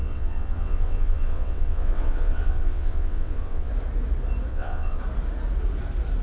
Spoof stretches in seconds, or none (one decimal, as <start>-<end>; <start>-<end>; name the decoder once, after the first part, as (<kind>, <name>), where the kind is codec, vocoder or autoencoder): 0.0-3.7 (vocoder, WaveNeXt); 4.5-5.0